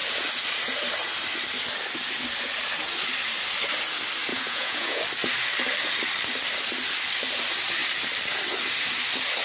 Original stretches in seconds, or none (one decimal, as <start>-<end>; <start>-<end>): 0.0-4.3; 5.0-9.4